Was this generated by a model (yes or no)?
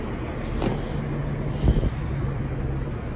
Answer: no